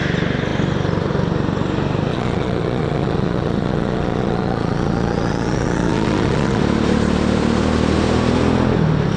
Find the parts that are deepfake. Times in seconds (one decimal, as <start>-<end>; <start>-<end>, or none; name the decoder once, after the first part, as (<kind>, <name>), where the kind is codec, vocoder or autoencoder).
2.1-6.6 (vocoder, Vocos)